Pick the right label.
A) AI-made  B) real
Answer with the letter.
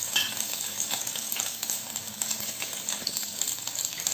A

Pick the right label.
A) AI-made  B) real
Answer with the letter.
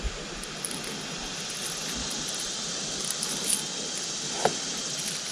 B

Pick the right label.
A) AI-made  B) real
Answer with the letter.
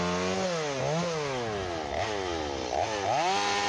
B